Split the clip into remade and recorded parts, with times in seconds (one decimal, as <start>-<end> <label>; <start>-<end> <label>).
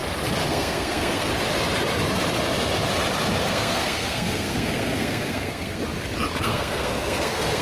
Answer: 0.0-0.5 recorded; 0.5-1.3 remade; 1.3-3.4 recorded; 3.4-5.8 remade; 5.8-6.4 recorded; 6.4-7.6 remade